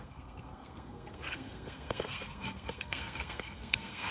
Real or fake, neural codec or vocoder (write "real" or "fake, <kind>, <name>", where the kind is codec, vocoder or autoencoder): fake, codec, SNAC